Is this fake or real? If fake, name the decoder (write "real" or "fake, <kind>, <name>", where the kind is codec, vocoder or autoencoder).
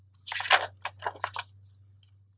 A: real